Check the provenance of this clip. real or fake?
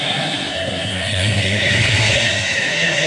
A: fake